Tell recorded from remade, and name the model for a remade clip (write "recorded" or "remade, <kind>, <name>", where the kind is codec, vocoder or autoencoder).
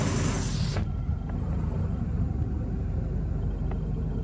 recorded